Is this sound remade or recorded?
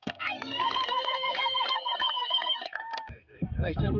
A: remade